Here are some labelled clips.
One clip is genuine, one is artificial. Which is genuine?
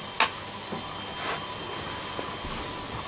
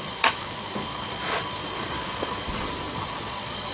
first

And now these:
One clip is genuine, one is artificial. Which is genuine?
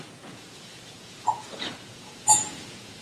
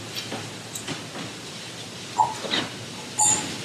second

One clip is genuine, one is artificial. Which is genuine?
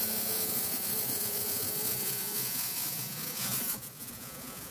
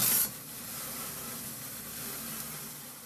second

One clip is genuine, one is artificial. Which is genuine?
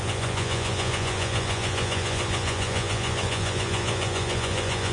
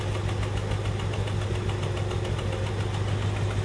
second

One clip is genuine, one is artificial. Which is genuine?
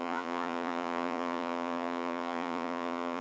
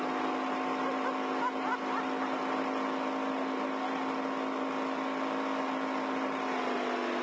second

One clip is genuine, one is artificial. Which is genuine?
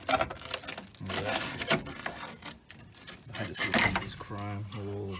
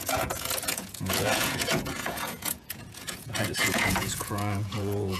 first